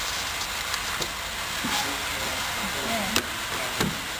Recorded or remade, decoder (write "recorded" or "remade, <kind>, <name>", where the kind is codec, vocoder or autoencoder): recorded